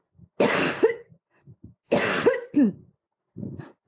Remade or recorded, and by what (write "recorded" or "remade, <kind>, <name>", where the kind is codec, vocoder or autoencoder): recorded